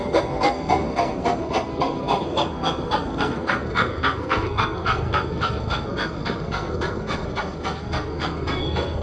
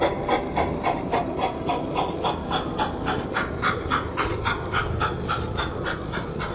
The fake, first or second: first